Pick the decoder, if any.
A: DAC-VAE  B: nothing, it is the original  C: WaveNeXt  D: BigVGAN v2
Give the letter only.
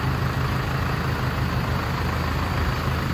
D